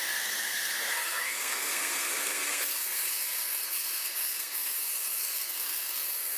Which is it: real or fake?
fake